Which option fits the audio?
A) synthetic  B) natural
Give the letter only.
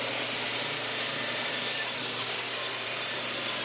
A